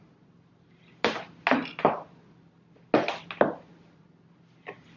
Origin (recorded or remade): recorded